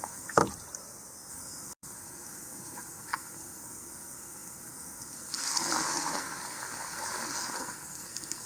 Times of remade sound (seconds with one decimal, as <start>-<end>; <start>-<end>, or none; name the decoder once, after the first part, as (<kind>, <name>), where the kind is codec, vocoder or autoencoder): 0.0-0.4 (codec, SNAC); 1.3-8.5